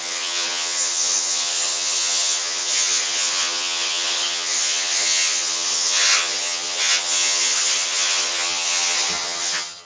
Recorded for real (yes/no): no